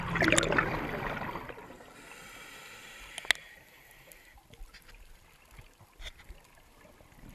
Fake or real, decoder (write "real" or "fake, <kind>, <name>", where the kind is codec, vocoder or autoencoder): real